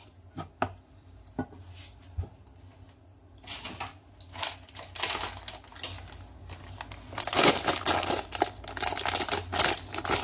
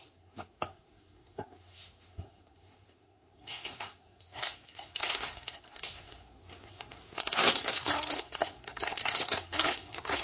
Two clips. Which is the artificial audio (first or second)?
second